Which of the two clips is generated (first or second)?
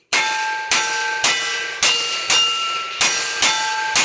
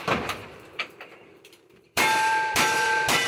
second